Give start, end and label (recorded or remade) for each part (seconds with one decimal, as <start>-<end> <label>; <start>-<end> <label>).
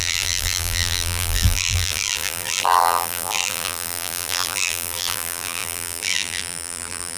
0.0-7.2 remade